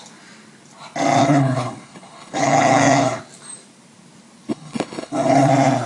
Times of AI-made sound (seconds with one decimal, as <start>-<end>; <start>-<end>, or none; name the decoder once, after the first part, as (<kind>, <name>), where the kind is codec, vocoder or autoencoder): 1.2-3.2 (codec, HILCodec); 4.5-5.5